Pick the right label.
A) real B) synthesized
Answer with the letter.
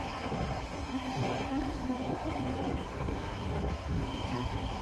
B